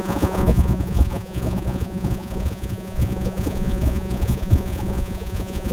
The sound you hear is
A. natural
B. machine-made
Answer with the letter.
B